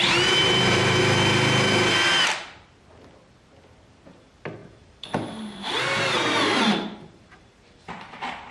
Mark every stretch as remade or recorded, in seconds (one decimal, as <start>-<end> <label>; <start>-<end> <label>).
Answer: 0.0-0.4 recorded; 0.4-1.0 remade; 1.0-4.6 recorded; 4.6-7.5 remade; 7.5-8.5 recorded